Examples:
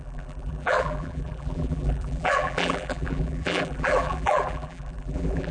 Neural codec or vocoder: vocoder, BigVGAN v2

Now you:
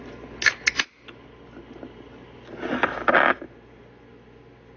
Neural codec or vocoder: none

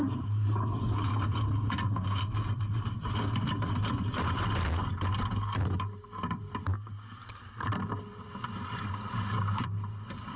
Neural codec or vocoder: vocoder, BigVGAN v2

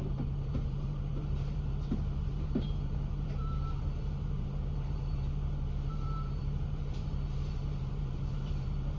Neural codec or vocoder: vocoder, BigVGAN v2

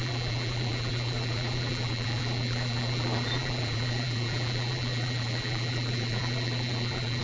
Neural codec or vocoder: vocoder, BigVGAN v2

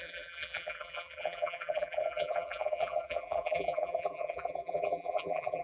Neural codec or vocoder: vocoder, BigVGAN v2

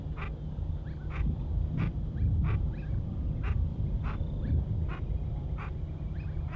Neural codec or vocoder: none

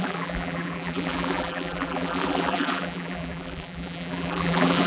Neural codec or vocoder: vocoder, BigVGAN v2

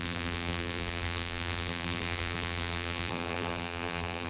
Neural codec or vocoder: vocoder, BigVGAN v2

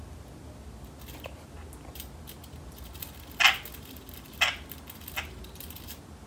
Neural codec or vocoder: none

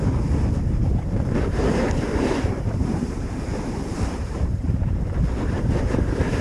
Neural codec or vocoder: vocoder, BigVGAN v2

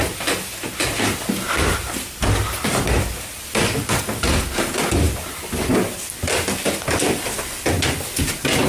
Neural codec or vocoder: none